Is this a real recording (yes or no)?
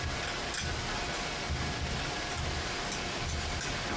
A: yes